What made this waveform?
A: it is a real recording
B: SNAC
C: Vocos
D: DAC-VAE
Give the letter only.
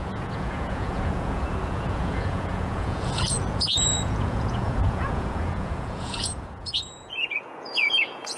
C